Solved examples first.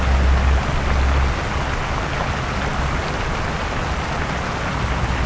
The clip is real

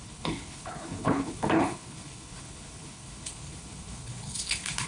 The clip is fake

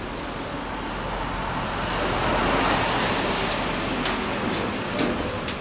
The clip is real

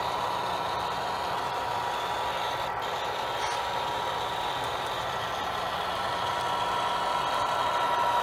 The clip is real